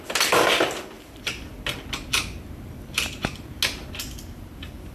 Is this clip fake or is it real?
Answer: real